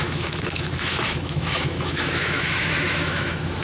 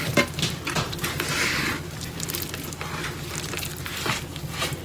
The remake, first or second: first